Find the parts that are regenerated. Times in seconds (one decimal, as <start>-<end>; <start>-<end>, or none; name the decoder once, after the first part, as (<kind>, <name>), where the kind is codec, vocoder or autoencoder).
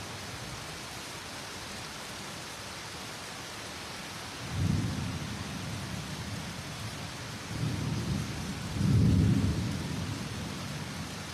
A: none